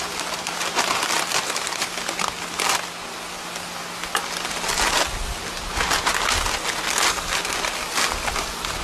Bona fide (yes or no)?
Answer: yes